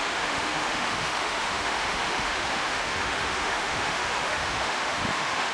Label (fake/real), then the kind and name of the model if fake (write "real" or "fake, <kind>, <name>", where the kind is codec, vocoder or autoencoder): fake, autoencoder, DAC-VAE